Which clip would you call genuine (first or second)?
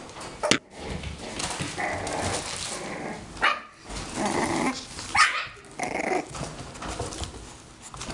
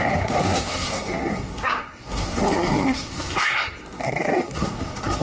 first